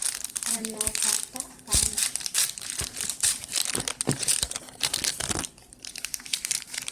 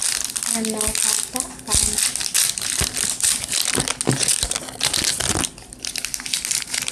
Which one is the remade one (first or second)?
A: first